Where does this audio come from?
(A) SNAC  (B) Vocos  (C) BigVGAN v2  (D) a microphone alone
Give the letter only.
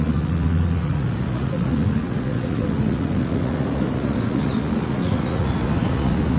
B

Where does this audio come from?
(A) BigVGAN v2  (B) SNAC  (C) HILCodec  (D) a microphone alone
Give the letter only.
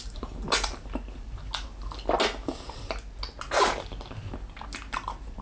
D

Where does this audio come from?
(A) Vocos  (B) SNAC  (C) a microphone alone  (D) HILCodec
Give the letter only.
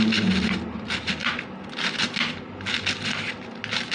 C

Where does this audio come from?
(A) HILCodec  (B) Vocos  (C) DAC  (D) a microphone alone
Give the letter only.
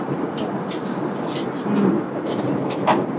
D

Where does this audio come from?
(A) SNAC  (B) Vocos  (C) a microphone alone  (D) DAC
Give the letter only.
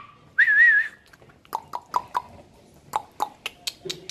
C